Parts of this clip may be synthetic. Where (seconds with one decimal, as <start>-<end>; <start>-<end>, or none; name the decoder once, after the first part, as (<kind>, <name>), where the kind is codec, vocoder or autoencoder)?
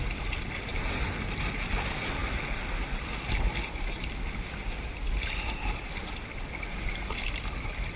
none